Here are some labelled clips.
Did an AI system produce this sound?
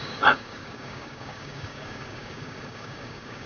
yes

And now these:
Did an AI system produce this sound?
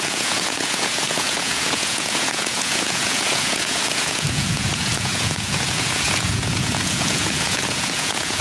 yes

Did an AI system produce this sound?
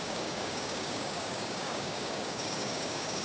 yes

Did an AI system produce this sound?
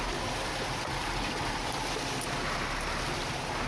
no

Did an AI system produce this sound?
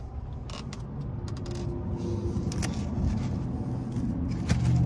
no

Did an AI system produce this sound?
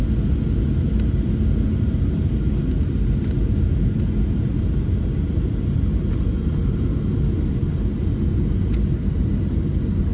no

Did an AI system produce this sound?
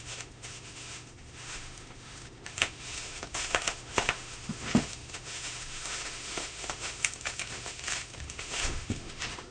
yes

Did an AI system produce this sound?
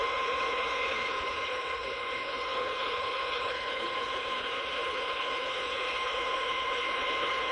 yes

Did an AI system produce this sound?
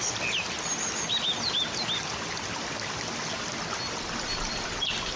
no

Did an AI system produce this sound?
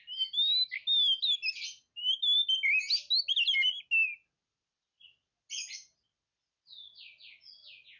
no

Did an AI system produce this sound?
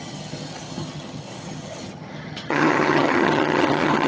yes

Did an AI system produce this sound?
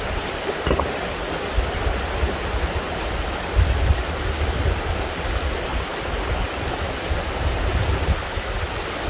no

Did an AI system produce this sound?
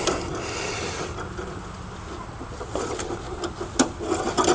no